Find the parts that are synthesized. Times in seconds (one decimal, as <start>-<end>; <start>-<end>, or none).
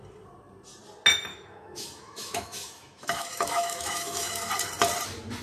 1.3-4.5